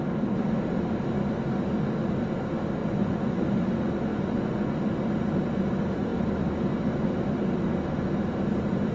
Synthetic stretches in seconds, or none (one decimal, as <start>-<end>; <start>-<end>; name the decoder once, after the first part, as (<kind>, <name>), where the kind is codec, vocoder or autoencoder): 2.8-3.4 (vocoder, Vocos); 4.1-4.8